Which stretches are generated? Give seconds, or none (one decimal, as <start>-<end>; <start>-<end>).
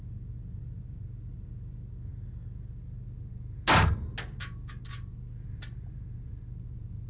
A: none